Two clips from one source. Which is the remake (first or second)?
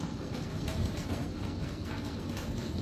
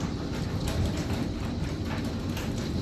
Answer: first